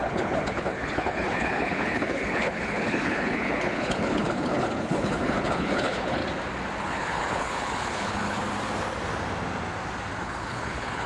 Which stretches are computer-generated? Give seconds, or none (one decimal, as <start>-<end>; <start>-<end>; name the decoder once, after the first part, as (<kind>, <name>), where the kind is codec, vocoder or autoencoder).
0.0-6.2 (codec, HILCodec); 6.8-8.4; 10.2-11.1